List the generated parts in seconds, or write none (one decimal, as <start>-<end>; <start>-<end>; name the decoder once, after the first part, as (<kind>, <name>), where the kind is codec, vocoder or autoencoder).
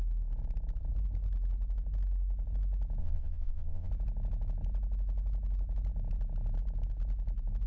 3.0-3.9 (vocoder, Vocos)